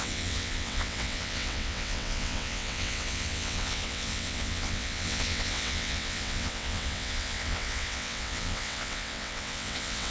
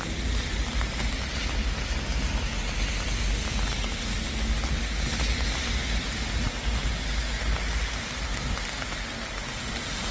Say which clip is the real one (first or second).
second